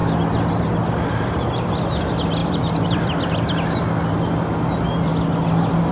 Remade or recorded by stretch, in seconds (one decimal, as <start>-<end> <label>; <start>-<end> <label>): 0.0-2.4 recorded; 2.4-3.1 remade; 3.1-5.9 recorded